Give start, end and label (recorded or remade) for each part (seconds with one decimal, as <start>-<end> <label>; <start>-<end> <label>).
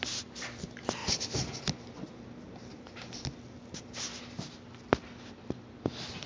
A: 0.0-6.3 recorded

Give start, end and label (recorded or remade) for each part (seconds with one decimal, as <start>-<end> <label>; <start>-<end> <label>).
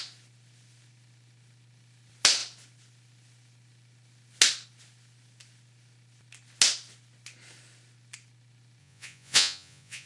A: 0.0-8.8 recorded; 8.8-10.1 remade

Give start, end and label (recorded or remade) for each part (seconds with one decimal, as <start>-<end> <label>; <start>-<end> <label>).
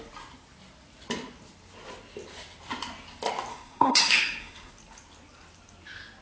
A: 0.0-3.5 recorded; 3.5-4.7 remade; 4.7-6.2 recorded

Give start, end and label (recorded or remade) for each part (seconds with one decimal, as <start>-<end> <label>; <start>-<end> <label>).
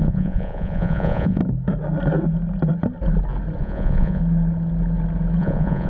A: 0.0-1.4 remade; 1.4-3.6 recorded; 3.6-4.2 remade; 4.2-5.4 recorded; 5.4-5.9 remade